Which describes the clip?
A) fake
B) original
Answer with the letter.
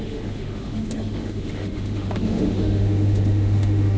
A